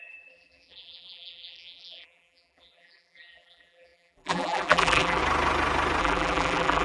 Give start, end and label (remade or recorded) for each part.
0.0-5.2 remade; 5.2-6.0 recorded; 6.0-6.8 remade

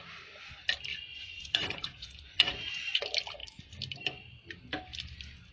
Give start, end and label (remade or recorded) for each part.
0.0-0.9 recorded; 0.9-3.0 remade; 3.0-5.5 recorded

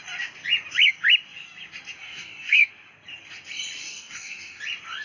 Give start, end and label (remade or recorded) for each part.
0.0-2.0 recorded; 2.0-2.7 remade; 2.7-3.8 recorded; 3.8-4.6 remade; 4.6-5.0 recorded

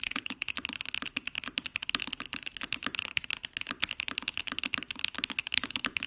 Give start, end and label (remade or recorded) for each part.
0.0-5.4 recorded; 5.4-6.1 remade

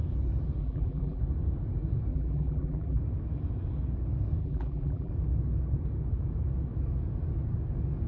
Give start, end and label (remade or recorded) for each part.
0.0-0.6 recorded; 0.6-1.2 remade; 1.2-2.1 recorded; 2.1-3.0 remade; 3.0-4.4 recorded; 4.4-5.1 remade; 5.1-8.1 recorded

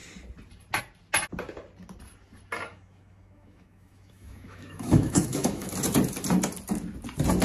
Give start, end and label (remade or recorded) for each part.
0.0-2.7 recorded; 2.7-5.7 remade; 5.7-7.4 recorded